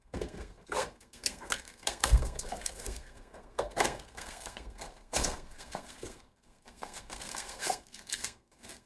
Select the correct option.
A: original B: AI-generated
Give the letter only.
B